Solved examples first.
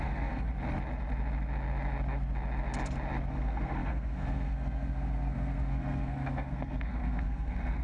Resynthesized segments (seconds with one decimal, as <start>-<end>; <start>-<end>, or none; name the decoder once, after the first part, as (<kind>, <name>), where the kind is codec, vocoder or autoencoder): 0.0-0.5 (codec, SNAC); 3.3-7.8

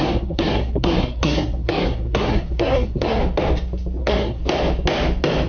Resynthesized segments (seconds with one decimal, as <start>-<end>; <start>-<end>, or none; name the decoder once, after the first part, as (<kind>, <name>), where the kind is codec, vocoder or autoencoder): 0.0-3.2 (codec, SNAC); 4.0-4.4

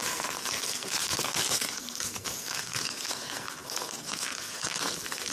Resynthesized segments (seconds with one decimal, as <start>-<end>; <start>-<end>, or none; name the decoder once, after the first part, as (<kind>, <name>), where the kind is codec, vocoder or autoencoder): 0.0-5.3 (codec, SNAC)

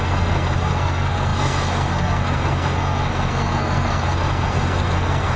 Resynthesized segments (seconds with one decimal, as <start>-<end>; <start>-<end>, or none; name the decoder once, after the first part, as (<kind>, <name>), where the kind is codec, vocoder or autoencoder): 0.0-5.4 (codec, SNAC)

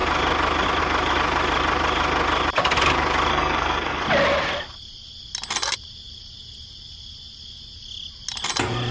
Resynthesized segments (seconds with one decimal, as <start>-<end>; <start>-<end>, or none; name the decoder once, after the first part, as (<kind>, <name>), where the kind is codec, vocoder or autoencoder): 3.3-4.0 (codec, SNAC)

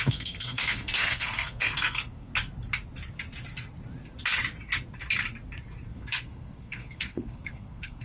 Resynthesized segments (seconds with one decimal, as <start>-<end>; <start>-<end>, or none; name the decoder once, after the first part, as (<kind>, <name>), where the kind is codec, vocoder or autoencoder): 0.0-2.3 (codec, SNAC); 5.9-8.0

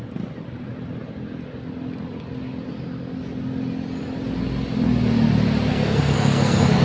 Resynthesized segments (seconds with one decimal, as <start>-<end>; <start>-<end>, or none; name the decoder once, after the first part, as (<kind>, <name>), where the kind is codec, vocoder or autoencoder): 5.7-6.8 (codec, SNAC)